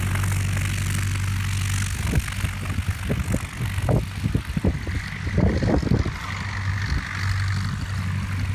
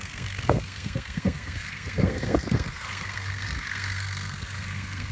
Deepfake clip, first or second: second